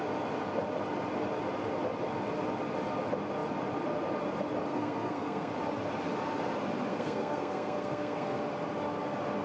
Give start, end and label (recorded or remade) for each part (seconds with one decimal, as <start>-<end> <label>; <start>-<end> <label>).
0.0-4.7 recorded; 4.7-5.5 remade; 5.5-6.9 recorded; 6.9-8.4 remade; 8.4-9.4 recorded